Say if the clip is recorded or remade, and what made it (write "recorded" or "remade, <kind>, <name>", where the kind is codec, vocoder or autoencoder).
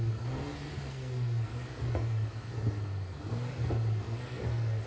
remade, codec, SNAC